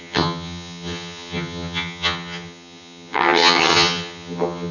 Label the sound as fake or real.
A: fake